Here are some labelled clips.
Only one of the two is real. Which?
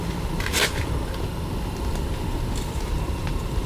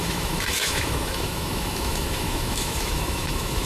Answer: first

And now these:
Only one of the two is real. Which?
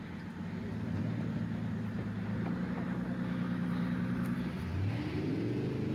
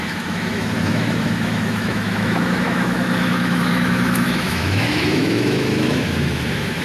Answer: first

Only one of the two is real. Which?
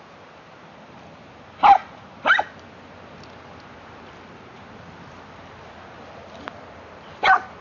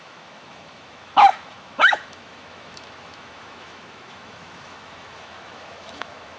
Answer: first